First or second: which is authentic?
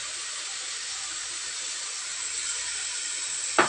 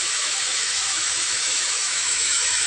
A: first